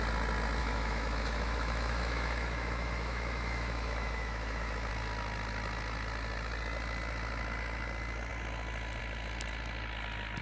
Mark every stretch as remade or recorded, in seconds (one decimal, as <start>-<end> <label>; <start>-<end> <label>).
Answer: 0.0-0.6 recorded; 0.6-4.9 remade; 4.9-10.4 recorded